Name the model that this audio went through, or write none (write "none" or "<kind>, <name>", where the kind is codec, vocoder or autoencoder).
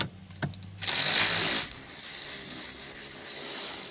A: none